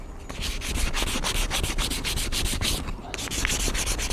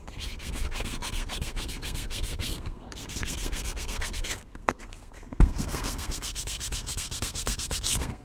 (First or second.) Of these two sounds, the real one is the first